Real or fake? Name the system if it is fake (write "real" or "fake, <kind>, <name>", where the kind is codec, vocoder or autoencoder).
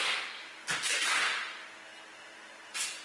real